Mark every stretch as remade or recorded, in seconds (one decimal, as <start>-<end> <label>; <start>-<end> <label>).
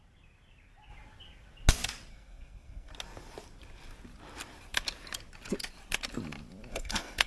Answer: 0.0-2.1 recorded; 2.1-2.9 remade; 2.9-6.7 recorded; 6.7-7.3 remade